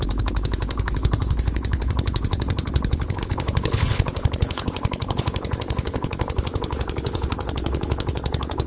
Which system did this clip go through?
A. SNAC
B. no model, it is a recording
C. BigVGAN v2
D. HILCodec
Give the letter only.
D